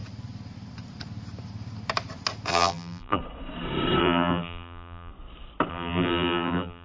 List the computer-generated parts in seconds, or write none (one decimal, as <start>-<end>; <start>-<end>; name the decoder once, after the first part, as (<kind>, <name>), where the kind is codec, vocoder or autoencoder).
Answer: 2.5-3.2 (vocoder, BigVGAN v2); 4.0-5.1; 5.7-6.8